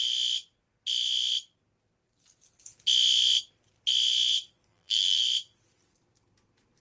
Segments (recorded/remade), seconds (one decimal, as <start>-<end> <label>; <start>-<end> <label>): 0.0-4.7 recorded; 4.7-5.2 remade; 5.2-6.8 recorded